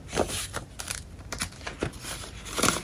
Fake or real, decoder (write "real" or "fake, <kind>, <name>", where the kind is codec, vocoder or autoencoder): real